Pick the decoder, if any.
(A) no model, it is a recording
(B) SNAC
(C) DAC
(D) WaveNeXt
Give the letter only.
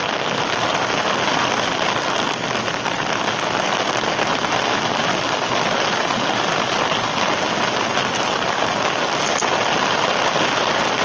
A